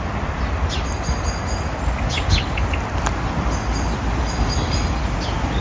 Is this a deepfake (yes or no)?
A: no